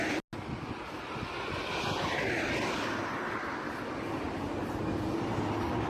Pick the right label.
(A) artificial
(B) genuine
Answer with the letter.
B